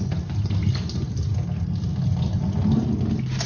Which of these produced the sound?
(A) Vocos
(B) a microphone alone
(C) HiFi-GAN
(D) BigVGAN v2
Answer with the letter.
B